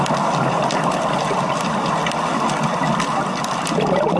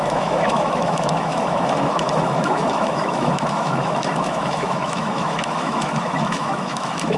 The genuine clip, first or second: first